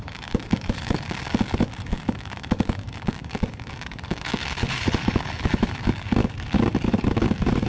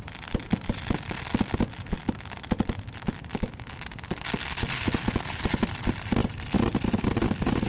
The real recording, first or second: second